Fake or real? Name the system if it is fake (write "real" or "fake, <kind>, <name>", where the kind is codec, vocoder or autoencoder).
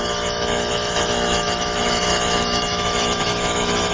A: fake, autoencoder, DAC-VAE